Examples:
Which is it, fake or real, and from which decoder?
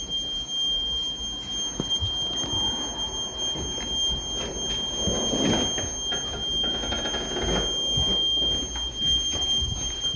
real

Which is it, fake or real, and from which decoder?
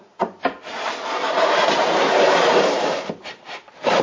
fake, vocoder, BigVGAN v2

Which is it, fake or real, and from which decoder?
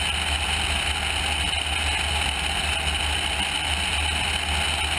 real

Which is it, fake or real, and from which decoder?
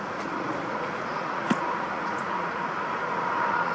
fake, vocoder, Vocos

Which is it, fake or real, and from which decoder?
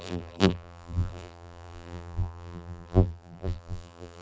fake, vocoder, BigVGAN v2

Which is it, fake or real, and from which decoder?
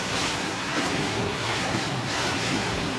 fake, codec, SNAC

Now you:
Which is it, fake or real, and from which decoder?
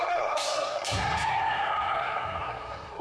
fake, codec, SNAC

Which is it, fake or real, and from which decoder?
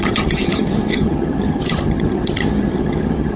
fake, vocoder, HiFi-GAN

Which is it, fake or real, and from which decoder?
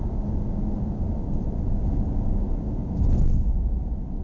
real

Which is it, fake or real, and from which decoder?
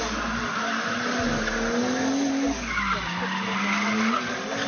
real